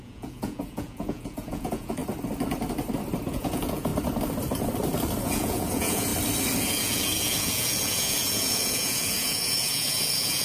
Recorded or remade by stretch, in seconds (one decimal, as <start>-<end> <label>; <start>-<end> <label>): 0.0-2.0 remade; 2.0-3.3 recorded; 3.3-3.9 remade; 3.9-5.2 recorded; 5.2-6.1 remade; 6.1-6.6 recorded; 6.6-10.4 remade